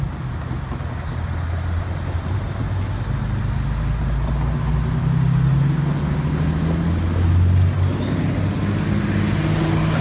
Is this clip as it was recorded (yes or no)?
yes